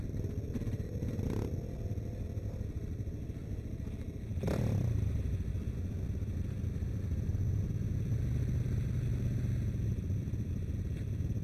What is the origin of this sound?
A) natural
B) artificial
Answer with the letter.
A